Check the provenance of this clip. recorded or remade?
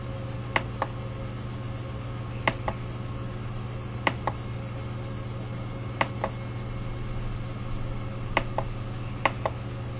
recorded